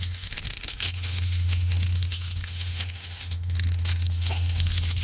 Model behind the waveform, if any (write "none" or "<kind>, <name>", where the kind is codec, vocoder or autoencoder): autoencoder, DAC-VAE